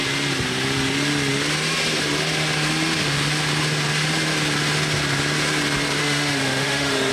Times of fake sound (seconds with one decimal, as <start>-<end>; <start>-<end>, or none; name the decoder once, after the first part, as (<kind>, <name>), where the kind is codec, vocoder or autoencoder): 6.0-7.1 (autoencoder, DAC-VAE)